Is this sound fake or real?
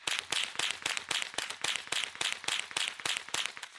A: real